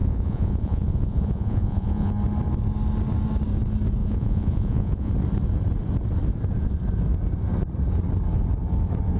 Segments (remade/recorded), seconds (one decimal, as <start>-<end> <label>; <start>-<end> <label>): 0.0-2.1 remade; 2.1-4.0 recorded; 4.0-5.1 remade; 5.1-9.2 recorded